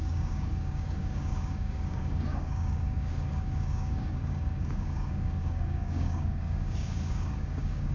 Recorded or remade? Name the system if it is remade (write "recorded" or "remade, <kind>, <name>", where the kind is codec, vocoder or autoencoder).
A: remade, codec, DAC